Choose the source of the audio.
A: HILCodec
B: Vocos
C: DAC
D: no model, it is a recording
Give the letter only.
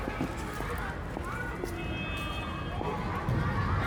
D